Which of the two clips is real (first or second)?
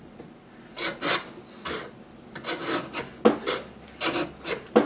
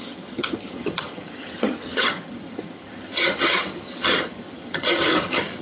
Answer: first